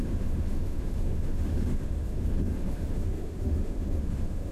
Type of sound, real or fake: fake